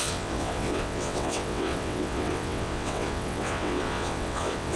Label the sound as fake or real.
fake